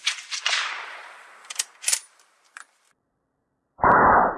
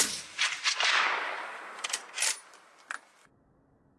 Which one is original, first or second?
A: second